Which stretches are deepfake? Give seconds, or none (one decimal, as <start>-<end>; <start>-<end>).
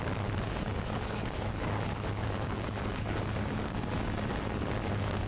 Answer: 0.7-3.9